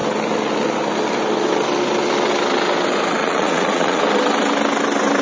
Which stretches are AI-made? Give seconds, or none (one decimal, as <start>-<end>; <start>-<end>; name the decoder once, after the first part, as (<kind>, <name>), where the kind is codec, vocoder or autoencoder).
3.2-4.0 (vocoder, Vocos)